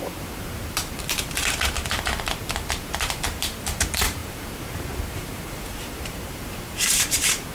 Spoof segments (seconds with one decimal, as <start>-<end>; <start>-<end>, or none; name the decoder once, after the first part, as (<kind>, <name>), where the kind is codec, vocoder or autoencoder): 0.0-7.5 (vocoder, BigVGAN v2)